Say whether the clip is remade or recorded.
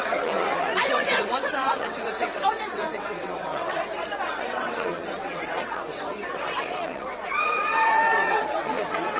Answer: remade